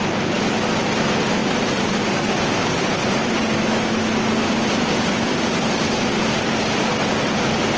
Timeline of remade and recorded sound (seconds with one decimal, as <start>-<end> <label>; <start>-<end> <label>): 0.0-7.8 recorded